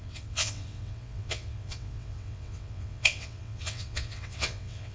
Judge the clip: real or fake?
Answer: fake